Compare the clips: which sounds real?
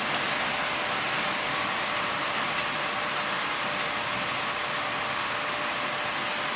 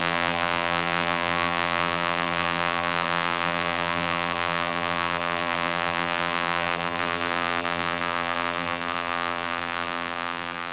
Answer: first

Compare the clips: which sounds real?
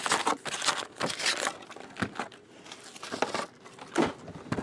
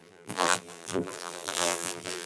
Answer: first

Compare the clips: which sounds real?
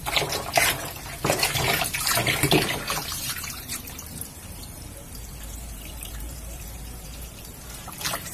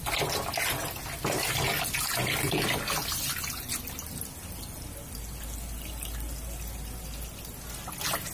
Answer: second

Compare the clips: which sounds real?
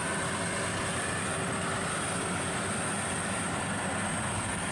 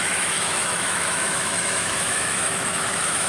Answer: first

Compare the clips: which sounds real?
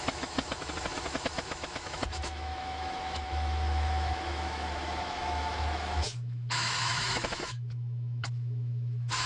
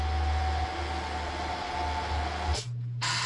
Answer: second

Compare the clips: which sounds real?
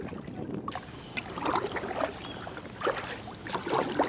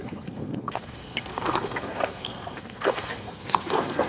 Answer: first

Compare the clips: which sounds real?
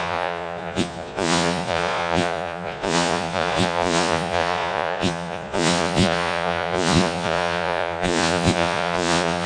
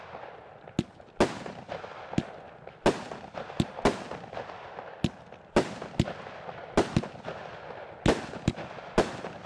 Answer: second